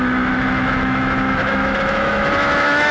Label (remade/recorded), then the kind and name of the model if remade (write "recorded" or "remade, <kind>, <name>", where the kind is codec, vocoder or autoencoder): remade, autoencoder, DAC-VAE